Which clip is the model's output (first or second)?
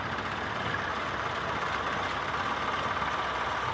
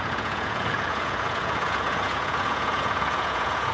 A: second